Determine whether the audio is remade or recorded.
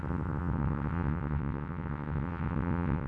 remade